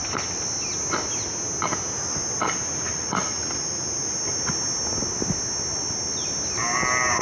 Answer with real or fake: real